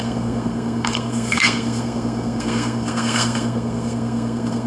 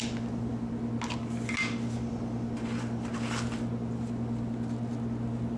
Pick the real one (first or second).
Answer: second